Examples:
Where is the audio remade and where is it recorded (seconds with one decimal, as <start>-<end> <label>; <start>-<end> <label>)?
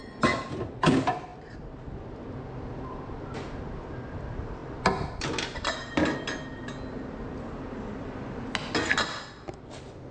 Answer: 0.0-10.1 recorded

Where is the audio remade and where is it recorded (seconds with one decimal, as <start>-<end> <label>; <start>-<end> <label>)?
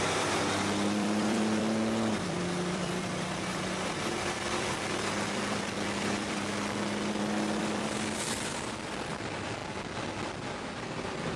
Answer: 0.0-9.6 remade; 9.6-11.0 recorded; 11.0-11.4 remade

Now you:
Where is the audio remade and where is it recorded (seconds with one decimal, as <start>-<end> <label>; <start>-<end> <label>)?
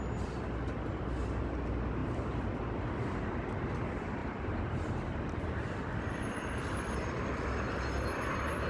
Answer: 0.0-4.2 recorded; 4.2-4.9 remade; 4.9-8.7 recorded